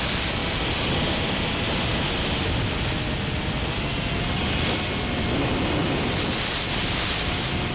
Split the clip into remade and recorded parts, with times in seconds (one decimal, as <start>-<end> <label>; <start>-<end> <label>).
0.0-5.8 recorded; 5.8-6.5 remade; 6.5-7.7 recorded